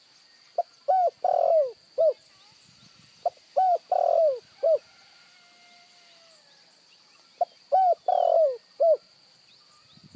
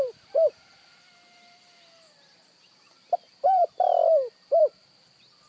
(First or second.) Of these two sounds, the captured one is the first